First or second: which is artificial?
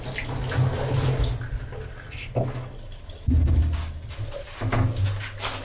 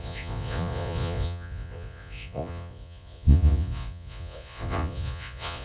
second